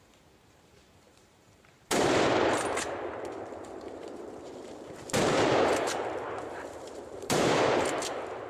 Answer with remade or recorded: remade